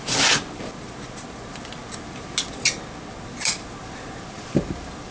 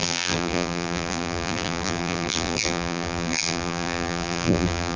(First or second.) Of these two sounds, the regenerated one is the second